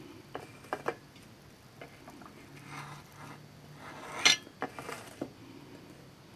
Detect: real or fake real